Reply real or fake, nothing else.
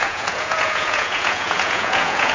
fake